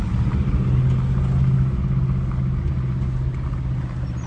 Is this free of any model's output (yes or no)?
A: yes